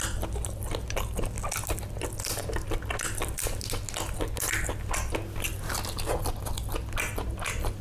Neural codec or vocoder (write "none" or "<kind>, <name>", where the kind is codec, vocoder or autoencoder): none